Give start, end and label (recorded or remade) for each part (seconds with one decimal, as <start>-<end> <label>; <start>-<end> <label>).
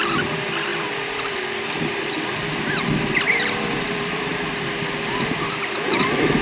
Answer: 0.0-4.3 remade; 4.3-4.8 recorded; 4.8-6.4 remade